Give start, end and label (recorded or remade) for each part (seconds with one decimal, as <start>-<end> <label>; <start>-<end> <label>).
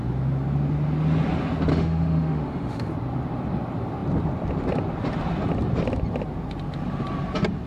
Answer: 0.0-1.7 recorded; 1.7-2.9 remade; 2.9-7.7 recorded